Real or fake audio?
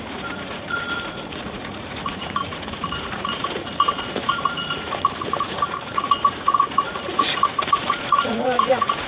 fake